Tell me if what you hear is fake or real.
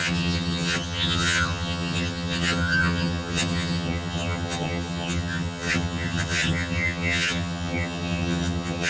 fake